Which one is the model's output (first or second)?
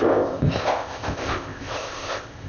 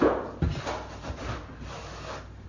first